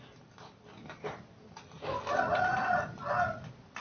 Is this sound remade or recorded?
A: recorded